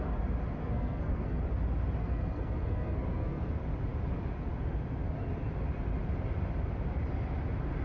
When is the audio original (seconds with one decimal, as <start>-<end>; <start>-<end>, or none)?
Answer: 0.0-0.6; 1.4-2.0; 3.5-7.8